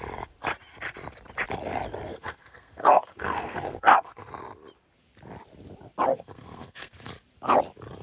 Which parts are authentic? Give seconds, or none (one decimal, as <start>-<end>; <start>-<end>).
0.0-2.1; 4.3-6.1; 7.1-8.0